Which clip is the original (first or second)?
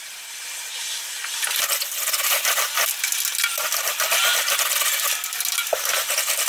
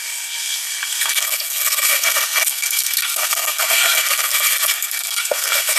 first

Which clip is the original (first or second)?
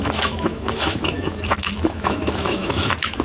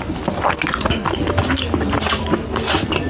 second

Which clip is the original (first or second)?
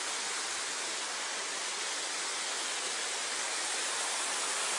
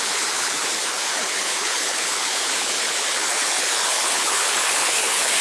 first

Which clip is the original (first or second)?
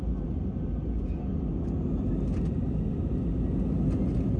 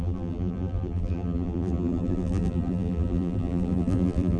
first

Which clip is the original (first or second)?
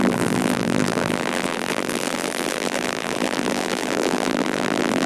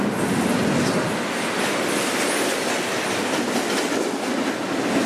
second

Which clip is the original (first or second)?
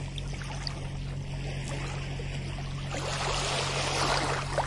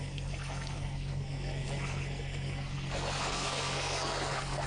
first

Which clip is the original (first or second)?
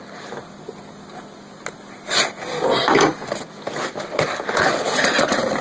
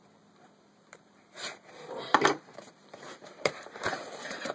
first